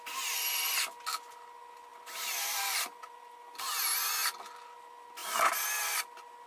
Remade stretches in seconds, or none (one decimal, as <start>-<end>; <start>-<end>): 1.9-3.2